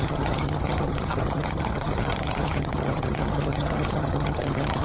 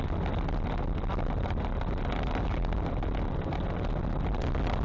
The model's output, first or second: first